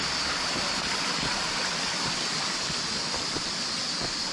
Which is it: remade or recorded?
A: recorded